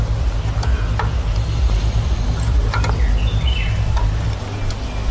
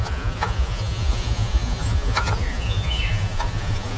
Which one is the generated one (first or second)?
second